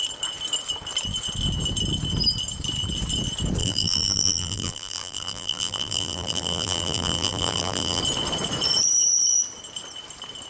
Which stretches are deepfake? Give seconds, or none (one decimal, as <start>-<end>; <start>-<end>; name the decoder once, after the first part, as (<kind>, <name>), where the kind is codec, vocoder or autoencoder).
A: 3.6-8.0 (vocoder, BigVGAN v2)